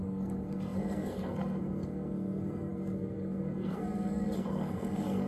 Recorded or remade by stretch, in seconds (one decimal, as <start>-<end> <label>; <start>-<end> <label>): 0.0-5.3 remade